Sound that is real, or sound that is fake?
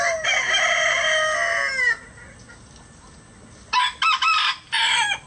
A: real